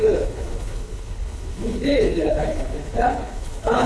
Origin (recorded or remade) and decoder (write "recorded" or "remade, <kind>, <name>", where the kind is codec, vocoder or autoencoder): remade, codec, HILCodec